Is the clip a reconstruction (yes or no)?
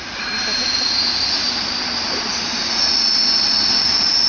no